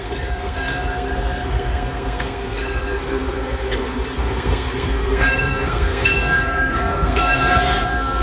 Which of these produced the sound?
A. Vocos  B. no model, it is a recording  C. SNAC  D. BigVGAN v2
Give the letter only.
C